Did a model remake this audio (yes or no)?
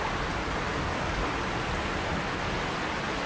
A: no